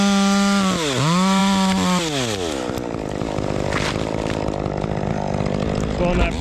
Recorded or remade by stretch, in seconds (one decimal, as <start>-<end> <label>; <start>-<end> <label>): 0.0-6.4 recorded